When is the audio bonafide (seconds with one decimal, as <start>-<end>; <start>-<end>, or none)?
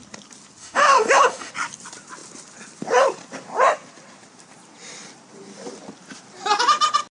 0.0-0.6; 1.5-7.1